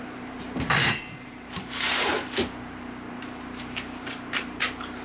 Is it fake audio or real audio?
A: fake